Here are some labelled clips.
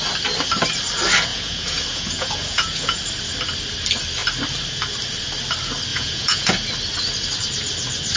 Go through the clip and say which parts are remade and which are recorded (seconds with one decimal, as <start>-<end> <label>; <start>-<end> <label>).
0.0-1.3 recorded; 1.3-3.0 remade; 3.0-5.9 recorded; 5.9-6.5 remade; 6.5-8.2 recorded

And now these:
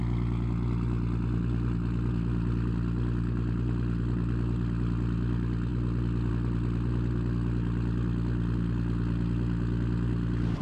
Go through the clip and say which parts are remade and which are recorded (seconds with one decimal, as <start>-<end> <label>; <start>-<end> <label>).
0.0-10.6 recorded

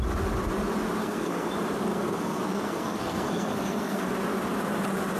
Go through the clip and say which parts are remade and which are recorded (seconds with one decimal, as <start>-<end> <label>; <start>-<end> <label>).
0.0-1.0 recorded; 1.0-1.5 remade; 1.5-1.9 recorded; 1.9-4.1 remade; 4.1-5.2 recorded

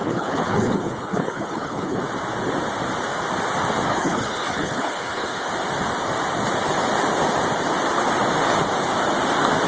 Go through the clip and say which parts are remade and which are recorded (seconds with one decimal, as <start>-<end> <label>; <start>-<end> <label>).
0.0-2.0 remade; 2.0-3.9 recorded; 3.9-5.5 remade; 5.5-9.7 recorded